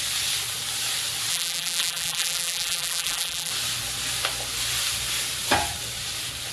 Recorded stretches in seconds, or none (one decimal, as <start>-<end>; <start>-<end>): 0.0-1.3; 3.5-6.5